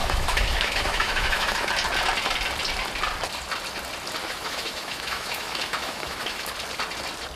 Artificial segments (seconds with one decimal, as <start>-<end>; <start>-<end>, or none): 0.0-1.7; 4.2-6.5